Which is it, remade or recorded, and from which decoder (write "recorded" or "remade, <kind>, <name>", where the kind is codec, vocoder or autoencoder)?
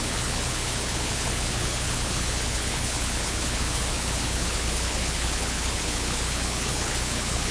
remade, codec, HILCodec